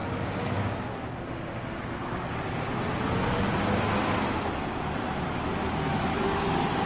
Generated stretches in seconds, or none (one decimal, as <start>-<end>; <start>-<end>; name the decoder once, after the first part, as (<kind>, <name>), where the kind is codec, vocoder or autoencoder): 5.9-6.9 (autoencoder, DAC-VAE)